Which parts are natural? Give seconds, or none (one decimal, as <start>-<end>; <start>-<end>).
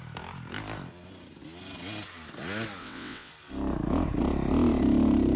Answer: 0.0-2.8; 3.3-5.4